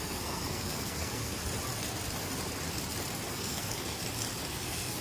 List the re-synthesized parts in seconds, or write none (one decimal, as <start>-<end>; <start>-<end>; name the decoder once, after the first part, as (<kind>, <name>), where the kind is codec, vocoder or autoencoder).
0.0-1.4 (codec, SNAC); 3.3-4.0; 4.5-5.0